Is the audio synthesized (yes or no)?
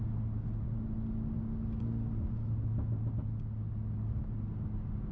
no